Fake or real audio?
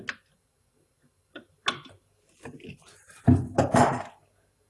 real